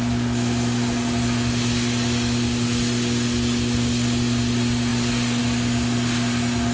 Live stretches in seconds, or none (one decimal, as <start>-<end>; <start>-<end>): 0.0-6.7